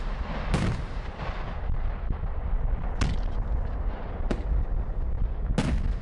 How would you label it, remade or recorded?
recorded